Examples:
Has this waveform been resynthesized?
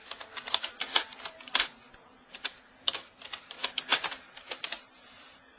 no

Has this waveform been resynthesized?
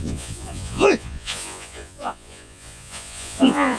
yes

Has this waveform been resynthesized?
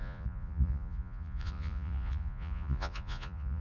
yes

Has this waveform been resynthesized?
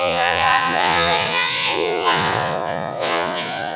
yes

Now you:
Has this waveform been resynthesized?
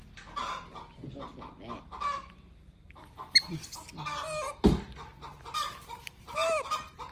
no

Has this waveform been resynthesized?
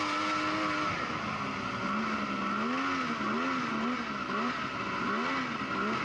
no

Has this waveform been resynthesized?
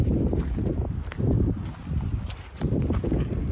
no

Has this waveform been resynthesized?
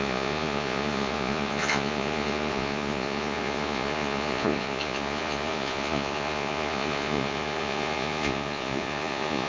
yes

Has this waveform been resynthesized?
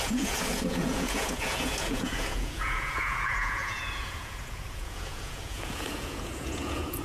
yes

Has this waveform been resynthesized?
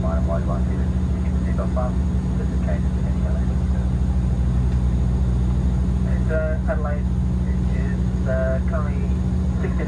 no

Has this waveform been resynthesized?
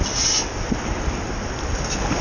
no